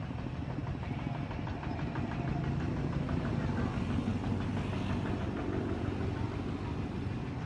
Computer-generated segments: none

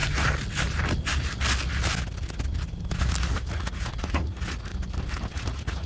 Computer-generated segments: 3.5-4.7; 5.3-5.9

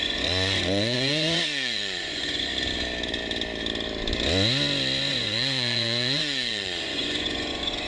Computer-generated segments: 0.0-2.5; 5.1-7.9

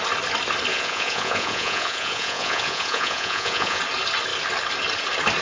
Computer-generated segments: 0.7-3.8

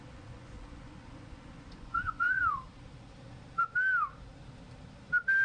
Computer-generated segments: 0.0-2.4

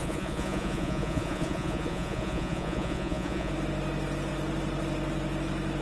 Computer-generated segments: 0.0-3.5